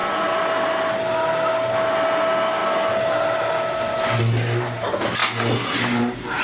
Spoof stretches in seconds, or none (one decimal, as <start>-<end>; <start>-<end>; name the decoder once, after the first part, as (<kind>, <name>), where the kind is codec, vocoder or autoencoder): none